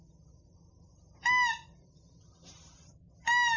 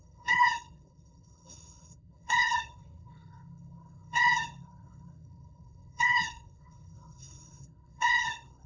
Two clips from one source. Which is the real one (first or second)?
first